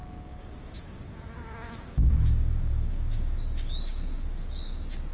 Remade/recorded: remade